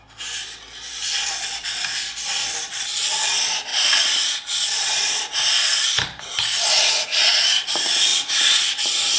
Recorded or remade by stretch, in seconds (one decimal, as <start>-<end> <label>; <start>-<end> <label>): 0.0-0.4 recorded; 0.4-3.3 remade; 3.3-3.7 recorded; 3.7-6.3 remade; 6.3-8.1 recorded; 8.1-9.2 remade